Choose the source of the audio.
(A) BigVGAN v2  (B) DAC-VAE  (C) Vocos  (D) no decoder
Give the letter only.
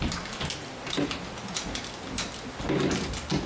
D